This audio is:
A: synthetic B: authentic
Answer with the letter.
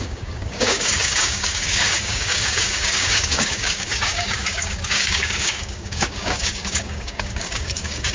A